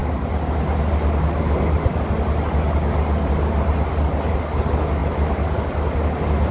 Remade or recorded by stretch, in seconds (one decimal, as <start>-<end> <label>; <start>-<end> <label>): 0.0-6.5 recorded